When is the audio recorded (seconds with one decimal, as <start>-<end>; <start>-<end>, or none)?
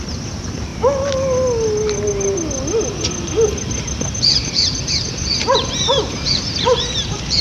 0.7-4.1